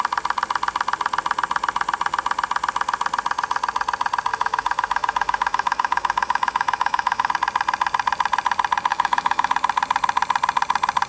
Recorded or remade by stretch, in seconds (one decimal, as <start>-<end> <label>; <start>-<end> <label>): 0.0-4.3 recorded; 4.3-7.3 remade; 7.3-8.9 recorded; 8.9-9.5 remade; 9.5-11.1 recorded